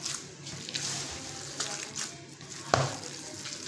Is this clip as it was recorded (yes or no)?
yes